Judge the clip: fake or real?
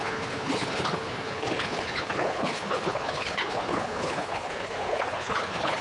fake